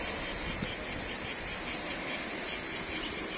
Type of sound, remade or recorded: recorded